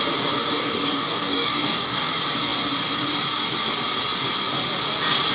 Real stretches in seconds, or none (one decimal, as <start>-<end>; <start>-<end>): 0.0-0.5; 2.1-5.3